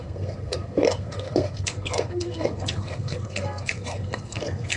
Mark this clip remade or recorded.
remade